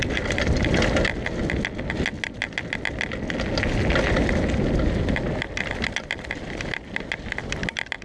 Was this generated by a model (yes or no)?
no